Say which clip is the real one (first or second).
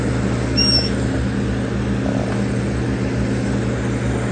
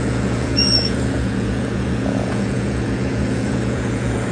first